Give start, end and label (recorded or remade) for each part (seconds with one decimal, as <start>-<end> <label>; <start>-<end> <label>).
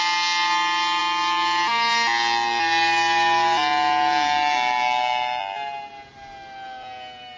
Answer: 0.0-7.4 recorded